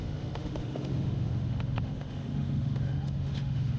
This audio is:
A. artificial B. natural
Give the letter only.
A